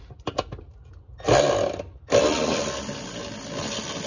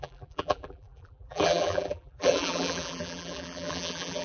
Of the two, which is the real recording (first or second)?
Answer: first